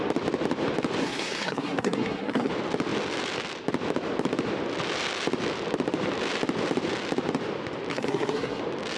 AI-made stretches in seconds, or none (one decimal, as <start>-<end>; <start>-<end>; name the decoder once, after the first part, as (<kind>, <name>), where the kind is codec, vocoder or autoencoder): 1.0-2.5 (codec, SNAC); 7.9-8.6